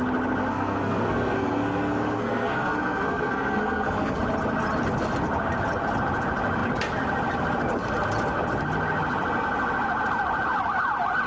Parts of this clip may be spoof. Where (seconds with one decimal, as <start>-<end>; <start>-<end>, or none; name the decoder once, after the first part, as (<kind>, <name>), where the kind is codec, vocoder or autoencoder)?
0.4-4.2 (codec, SNAC)